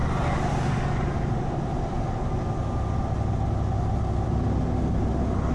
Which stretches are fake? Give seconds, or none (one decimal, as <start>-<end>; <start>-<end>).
none